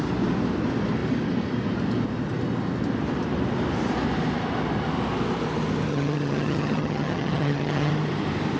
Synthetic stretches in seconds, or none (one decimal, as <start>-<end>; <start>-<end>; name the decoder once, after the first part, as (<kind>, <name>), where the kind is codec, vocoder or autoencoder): 5.9-7.9 (vocoder, HiFi-GAN)